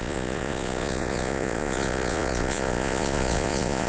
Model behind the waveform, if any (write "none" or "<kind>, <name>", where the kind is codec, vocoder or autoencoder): vocoder, Vocos